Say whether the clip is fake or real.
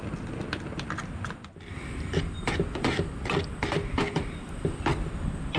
real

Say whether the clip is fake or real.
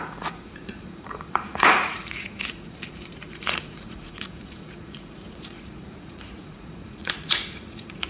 fake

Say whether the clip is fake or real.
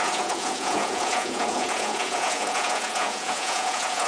fake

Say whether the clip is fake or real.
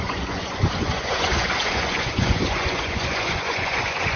fake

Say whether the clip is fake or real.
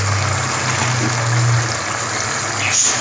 real